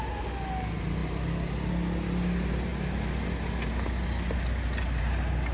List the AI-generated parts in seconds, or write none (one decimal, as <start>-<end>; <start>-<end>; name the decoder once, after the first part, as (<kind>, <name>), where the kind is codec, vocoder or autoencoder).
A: none